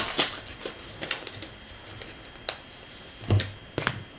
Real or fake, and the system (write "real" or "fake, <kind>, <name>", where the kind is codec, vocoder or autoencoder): real